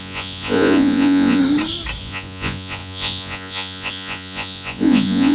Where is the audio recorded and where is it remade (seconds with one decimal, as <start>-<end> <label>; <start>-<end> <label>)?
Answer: 0.0-1.4 remade; 1.4-2.0 recorded; 2.0-5.3 remade